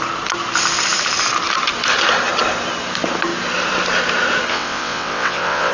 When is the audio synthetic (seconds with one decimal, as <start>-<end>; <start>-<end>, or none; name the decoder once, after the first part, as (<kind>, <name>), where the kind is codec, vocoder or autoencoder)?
4.5-5.7 (vocoder, WaveNeXt)